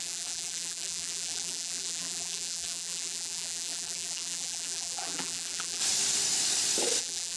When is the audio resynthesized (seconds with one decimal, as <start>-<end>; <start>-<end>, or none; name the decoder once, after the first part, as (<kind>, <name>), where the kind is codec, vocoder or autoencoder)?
0.0-5.8 (vocoder, BigVGAN v2); 7.0-7.4